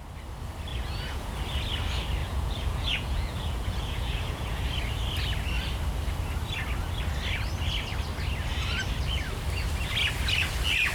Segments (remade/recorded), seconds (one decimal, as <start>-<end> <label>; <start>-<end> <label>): 0.0-0.7 recorded; 0.7-1.3 remade; 1.3-2.2 recorded; 2.2-4.6 remade; 4.6-10.9 recorded